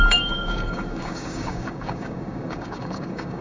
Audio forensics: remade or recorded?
remade